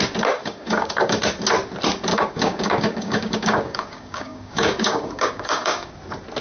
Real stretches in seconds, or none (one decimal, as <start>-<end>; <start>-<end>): 0.0-0.4; 1.2-2.1; 5.9-6.4